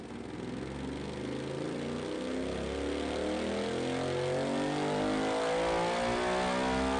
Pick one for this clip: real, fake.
real